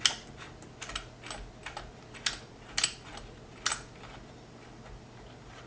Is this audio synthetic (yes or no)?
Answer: no